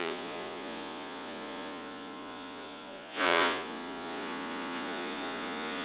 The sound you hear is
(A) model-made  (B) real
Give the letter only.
A